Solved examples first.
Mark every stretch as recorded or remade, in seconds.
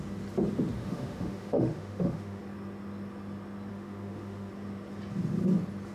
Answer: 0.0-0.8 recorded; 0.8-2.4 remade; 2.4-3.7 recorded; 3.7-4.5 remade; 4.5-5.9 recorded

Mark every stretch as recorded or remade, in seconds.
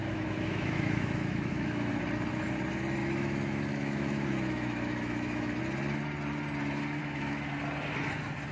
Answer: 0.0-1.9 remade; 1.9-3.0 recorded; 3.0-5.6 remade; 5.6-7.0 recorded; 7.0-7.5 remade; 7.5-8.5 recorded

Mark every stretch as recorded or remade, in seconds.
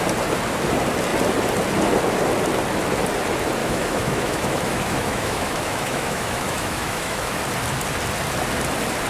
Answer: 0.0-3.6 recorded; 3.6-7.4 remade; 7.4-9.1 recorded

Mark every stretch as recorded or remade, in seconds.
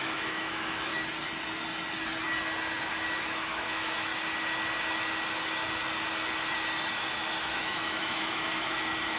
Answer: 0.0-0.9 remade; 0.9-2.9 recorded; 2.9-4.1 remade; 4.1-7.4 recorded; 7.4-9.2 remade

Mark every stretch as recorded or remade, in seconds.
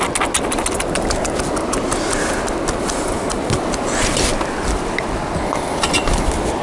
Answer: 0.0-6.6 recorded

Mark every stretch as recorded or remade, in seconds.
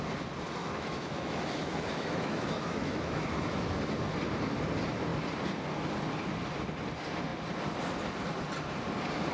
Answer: 0.0-0.6 recorded; 0.6-3.7 remade; 3.7-9.3 recorded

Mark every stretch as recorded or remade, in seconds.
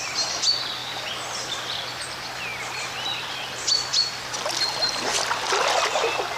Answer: 0.0-6.4 recorded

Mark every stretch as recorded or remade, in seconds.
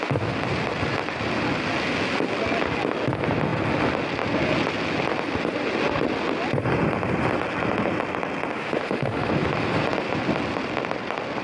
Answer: 0.0-8.5 recorded; 8.5-9.3 remade; 9.3-11.4 recorded